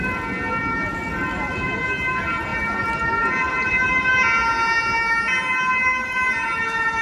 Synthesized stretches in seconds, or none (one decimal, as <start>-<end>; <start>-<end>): none